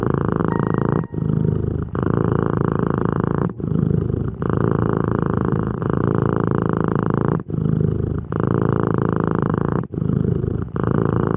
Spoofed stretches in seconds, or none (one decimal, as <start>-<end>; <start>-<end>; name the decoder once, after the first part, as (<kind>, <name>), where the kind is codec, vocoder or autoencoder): 0.0-0.4 (vocoder, Vocos); 1.9-6.0; 9.5-11.4